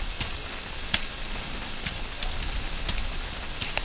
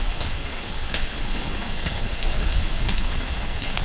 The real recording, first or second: first